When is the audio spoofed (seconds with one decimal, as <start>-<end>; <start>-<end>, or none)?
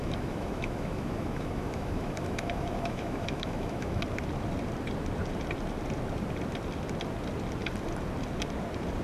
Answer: 0.0-4.0